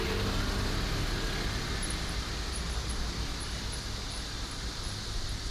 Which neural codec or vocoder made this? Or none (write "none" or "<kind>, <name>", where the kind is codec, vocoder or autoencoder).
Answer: none